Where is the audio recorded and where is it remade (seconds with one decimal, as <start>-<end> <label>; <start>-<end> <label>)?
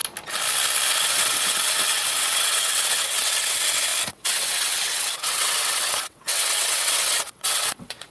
0.0-0.9 recorded; 0.9-8.1 remade